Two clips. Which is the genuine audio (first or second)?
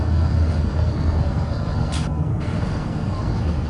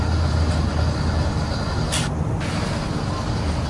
second